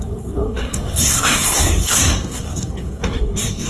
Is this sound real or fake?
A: fake